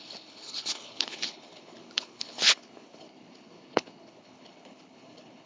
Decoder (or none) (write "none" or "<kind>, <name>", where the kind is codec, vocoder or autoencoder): codec, HILCodec